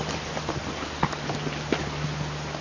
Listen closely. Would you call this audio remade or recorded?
recorded